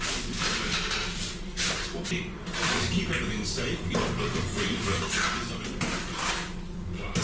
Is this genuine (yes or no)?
no